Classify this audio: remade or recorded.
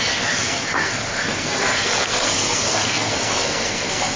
remade